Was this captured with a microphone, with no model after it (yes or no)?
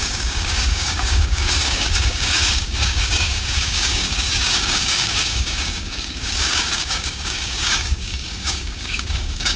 no